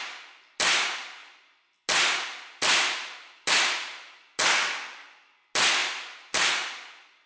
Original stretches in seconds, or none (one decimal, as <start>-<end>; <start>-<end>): 0.0-5.8; 6.5-7.3